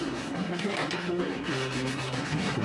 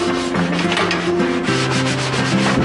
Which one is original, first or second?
second